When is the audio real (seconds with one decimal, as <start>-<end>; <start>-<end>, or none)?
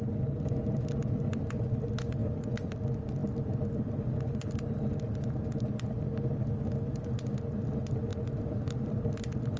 0.0-2.2; 2.7-3.2; 4.2-9.6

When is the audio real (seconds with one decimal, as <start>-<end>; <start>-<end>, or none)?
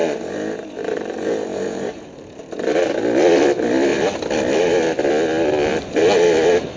2.2-6.8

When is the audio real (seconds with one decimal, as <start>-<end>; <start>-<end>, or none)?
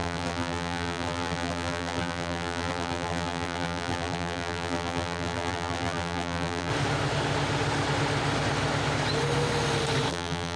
6.7-10.1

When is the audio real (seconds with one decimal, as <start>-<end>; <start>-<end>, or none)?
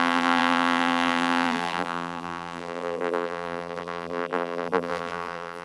none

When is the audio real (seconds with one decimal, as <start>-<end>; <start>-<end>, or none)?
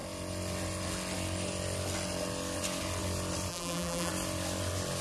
0.0-3.5; 4.1-5.0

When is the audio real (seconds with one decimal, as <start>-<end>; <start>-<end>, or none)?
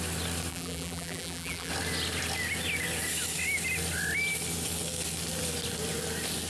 0.0-0.5; 1.7-6.5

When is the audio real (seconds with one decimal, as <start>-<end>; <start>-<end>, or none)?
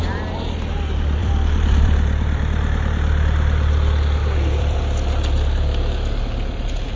0.0-1.2; 4.8-7.0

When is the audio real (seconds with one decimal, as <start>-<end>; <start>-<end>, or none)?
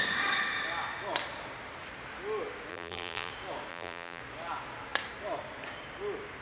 0.0-2.7; 3.3-3.7; 4.2-6.4